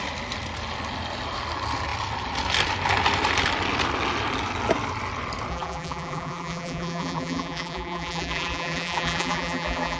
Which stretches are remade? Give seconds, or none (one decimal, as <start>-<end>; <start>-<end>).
5.5-10.0